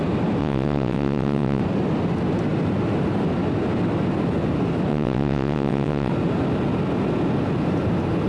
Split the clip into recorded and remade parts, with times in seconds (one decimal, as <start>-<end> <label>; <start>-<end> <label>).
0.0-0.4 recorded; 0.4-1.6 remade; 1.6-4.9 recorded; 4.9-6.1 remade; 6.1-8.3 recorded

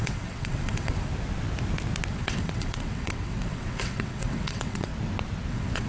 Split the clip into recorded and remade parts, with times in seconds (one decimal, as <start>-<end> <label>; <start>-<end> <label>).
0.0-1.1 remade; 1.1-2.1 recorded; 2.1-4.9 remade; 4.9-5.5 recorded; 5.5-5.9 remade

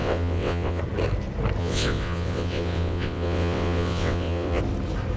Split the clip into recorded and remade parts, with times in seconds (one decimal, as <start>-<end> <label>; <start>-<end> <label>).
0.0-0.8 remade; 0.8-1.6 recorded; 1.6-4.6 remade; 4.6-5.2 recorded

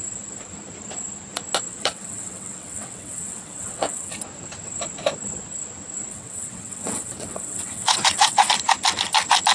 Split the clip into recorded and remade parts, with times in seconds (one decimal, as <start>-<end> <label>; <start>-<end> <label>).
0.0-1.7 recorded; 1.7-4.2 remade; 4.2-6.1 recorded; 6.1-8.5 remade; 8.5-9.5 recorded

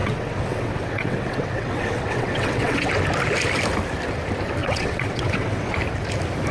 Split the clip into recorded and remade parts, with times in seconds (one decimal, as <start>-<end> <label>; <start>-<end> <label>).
0.0-2.9 remade; 2.9-4.6 recorded; 4.6-5.7 remade; 5.7-6.5 recorded

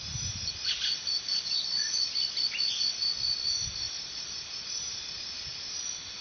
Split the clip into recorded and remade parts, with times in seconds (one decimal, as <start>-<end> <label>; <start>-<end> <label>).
0.0-6.2 recorded